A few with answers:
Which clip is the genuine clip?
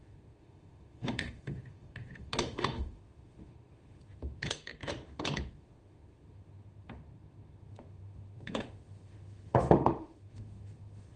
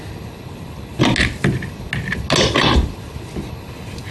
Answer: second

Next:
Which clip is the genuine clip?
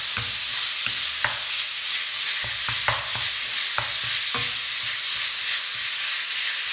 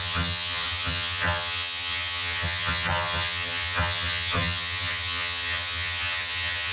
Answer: first